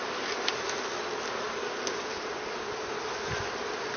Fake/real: real